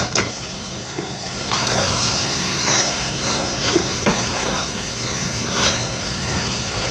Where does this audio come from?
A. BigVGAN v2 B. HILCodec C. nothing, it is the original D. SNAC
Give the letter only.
D